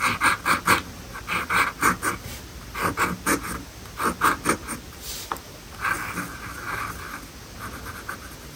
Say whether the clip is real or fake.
real